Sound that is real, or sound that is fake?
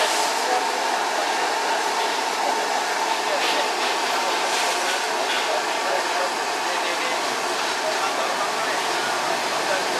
real